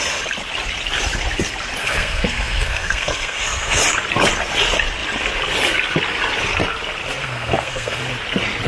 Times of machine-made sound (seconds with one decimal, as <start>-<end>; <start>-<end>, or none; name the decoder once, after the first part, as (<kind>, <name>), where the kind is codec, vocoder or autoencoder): 1.8-3.8 (codec, SNAC); 7.2-8.0